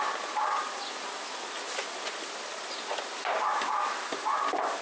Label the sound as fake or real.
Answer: real